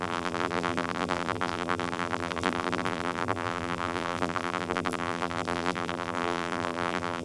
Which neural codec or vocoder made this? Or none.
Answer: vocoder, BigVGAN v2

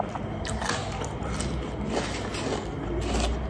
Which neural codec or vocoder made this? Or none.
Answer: none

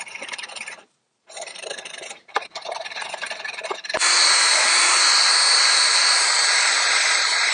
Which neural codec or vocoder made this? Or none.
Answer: vocoder, BigVGAN v2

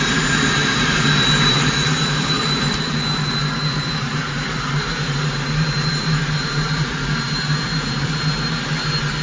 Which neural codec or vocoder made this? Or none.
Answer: vocoder, BigVGAN v2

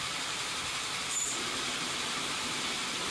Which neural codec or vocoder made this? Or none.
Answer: vocoder, BigVGAN v2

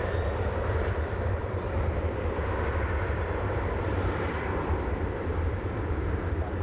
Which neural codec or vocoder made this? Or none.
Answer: vocoder, BigVGAN v2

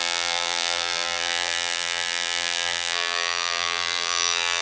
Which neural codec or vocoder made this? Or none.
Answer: vocoder, BigVGAN v2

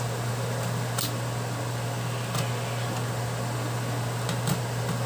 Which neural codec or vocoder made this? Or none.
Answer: none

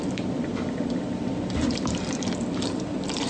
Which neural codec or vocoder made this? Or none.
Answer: vocoder, BigVGAN v2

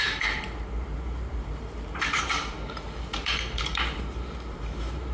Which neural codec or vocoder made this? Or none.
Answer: vocoder, BigVGAN v2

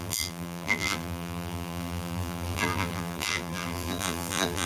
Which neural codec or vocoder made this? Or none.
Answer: vocoder, BigVGAN v2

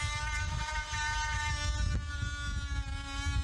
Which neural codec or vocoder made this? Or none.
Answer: none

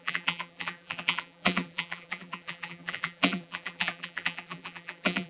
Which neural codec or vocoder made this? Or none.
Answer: vocoder, BigVGAN v2